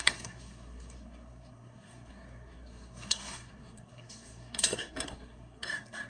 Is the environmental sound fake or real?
fake